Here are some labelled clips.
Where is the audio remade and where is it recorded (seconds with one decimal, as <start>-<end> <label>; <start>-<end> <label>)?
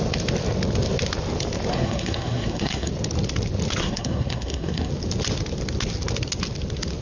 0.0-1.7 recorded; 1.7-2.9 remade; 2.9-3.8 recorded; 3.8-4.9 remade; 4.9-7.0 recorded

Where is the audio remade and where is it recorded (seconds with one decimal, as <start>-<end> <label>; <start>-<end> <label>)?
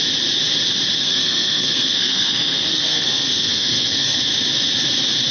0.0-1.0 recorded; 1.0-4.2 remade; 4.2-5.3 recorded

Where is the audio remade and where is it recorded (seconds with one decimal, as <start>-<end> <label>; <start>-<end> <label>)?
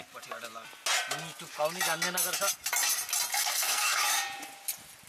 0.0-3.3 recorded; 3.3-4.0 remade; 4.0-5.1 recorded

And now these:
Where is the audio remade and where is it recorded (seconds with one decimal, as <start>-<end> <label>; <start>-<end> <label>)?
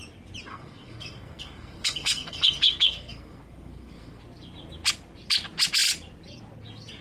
0.0-0.5 recorded; 0.5-4.2 remade; 4.2-7.0 recorded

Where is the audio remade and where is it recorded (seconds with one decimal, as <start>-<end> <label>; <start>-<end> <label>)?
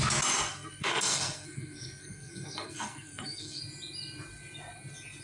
0.0-0.5 recorded; 0.5-3.6 remade; 3.6-5.2 recorded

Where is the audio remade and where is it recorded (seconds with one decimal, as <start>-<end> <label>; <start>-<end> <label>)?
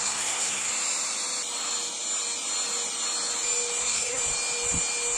0.0-0.7 remade; 0.7-3.8 recorded; 3.8-4.2 remade; 4.2-5.2 recorded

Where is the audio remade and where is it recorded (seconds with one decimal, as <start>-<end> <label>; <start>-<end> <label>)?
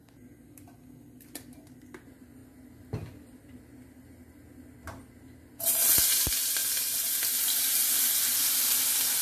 0.0-9.2 recorded